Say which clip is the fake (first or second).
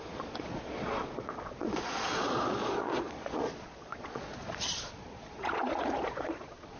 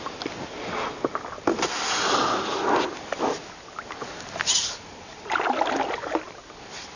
first